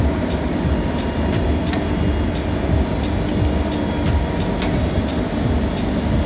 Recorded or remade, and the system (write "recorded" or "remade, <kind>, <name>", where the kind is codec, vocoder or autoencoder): recorded